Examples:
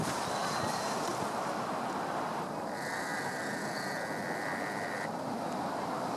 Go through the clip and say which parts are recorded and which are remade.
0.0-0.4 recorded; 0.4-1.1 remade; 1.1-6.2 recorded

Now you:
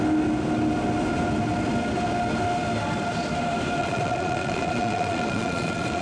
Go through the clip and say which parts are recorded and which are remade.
0.0-3.8 recorded; 3.8-6.0 remade

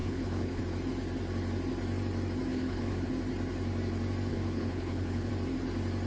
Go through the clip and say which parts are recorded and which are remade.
0.0-0.6 remade; 0.6-2.5 recorded; 2.5-3.1 remade; 3.1-4.3 recorded; 4.3-5.3 remade; 5.3-6.1 recorded

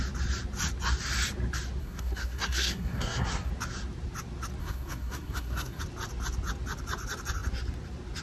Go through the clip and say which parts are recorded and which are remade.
0.0-1.8 recorded; 1.8-3.5 remade; 3.5-4.6 recorded; 4.6-5.8 remade; 5.8-8.2 recorded

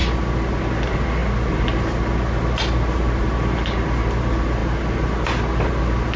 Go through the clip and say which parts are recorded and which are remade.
0.0-6.2 recorded

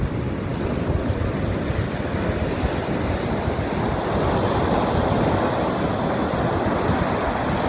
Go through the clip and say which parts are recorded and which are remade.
0.0-7.7 recorded

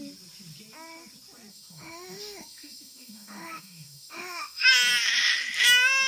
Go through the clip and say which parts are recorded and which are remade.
0.0-1.5 recorded; 1.5-4.7 remade; 4.7-6.1 recorded